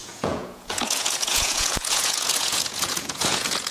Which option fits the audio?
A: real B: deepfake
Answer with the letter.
B